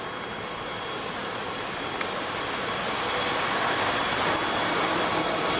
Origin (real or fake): real